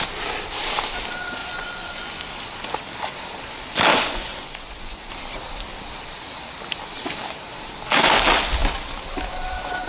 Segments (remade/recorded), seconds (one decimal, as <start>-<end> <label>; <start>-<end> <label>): 0.0-1.4 recorded; 1.4-2.2 remade; 2.2-3.9 recorded; 3.9-5.1 remade; 5.1-9.9 recorded